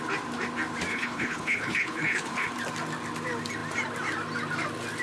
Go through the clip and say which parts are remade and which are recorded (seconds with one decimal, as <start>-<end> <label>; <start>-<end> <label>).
0.0-0.9 recorded; 0.9-2.5 remade; 2.5-5.0 recorded